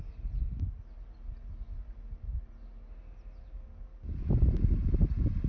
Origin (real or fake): real